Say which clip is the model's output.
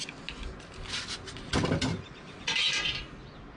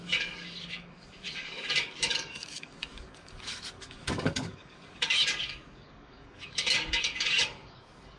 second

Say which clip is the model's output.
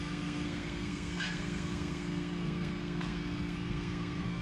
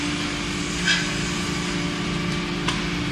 first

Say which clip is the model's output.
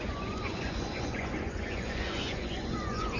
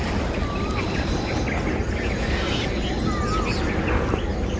first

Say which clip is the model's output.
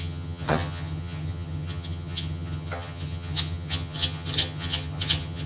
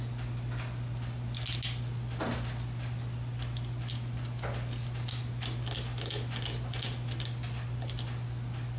first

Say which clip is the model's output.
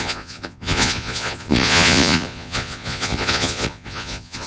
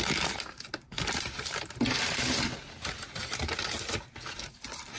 first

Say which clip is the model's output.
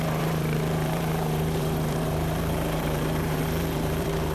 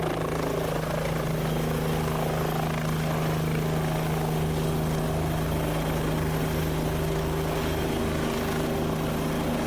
first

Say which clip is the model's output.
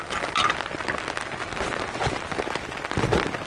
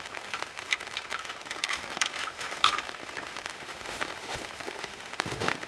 second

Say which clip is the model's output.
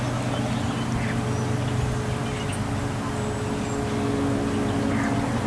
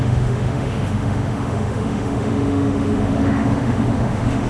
second